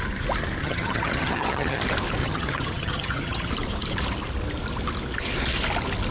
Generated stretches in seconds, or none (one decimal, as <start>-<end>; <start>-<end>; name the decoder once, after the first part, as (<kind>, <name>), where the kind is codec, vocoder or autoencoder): 0.6-1.8 (vocoder, HiFi-GAN); 2.2-3.5